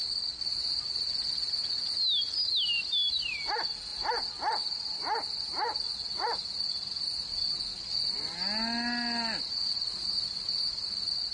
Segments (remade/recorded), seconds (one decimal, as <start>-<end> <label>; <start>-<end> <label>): 0.0-11.3 recorded